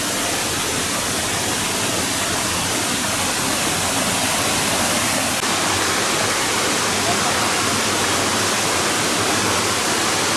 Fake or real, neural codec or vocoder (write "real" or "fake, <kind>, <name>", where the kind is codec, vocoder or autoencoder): real